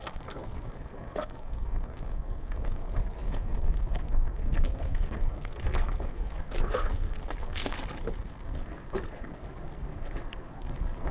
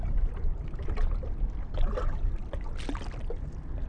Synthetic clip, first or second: first